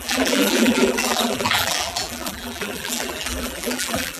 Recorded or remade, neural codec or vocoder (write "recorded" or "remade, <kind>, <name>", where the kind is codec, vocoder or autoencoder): remade, vocoder, BigVGAN v2